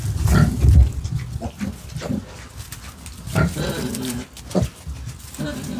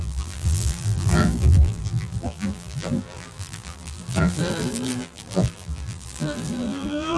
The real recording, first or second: first